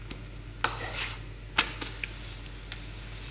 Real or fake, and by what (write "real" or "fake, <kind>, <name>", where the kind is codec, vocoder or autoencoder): real